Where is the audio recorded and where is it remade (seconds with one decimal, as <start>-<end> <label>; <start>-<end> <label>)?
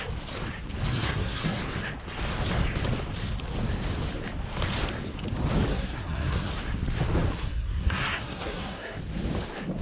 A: 0.0-0.9 recorded; 0.9-1.6 remade; 1.6-5.7 recorded; 5.7-6.5 remade; 6.5-7.4 recorded; 7.4-9.0 remade; 9.0-9.8 recorded